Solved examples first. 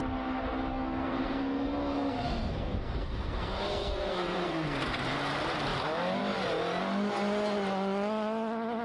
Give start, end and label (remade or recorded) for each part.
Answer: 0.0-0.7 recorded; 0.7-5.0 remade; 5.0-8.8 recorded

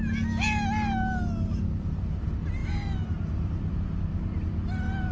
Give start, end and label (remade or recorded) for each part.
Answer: 0.0-5.1 recorded

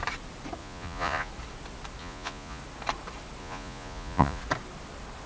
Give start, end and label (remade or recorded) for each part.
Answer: 0.0-0.6 recorded; 0.6-1.3 remade; 1.3-2.0 recorded; 2.0-2.6 remade; 2.6-3.4 recorded; 3.4-4.4 remade; 4.4-5.3 recorded

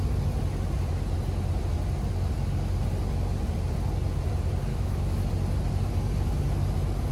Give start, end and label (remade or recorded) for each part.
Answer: 0.0-4.7 recorded; 4.7-5.3 remade; 5.3-7.1 recorded

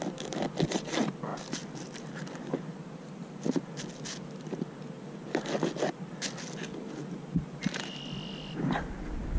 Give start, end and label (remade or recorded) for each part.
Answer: 0.0-9.4 recorded

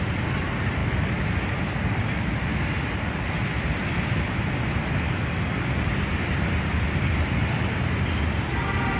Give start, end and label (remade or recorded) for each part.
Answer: 0.0-9.0 recorded